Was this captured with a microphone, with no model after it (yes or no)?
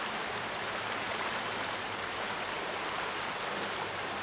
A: no